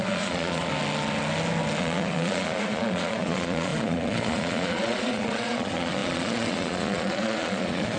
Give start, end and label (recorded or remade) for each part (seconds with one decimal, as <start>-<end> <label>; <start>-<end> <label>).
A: 0.0-0.7 remade; 0.7-1.8 recorded; 1.8-8.0 remade